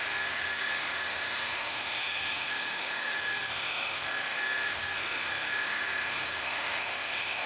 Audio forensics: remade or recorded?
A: remade